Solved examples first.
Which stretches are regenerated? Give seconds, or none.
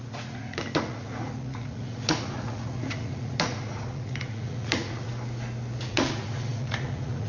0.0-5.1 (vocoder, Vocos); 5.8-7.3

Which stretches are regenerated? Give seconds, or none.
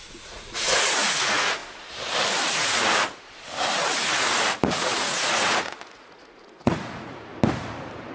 0.0-1.6 (vocoder, Vocos); 4.7-7.3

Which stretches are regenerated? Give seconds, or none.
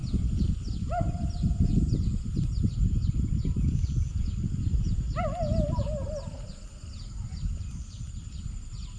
none